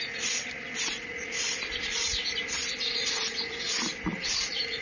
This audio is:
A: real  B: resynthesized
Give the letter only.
A